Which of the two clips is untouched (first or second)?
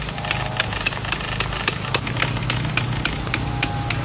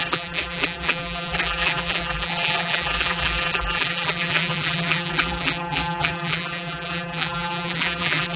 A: first